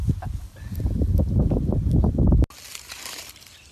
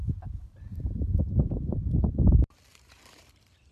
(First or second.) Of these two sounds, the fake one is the second